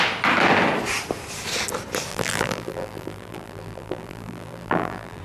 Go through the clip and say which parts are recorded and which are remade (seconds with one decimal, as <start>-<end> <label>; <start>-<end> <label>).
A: 0.0-2.1 recorded; 2.1-5.2 remade